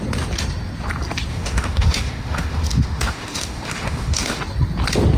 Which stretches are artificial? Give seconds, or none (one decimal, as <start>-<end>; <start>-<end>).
1.3-4.4